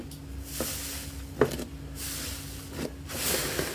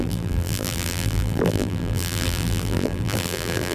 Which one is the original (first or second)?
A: first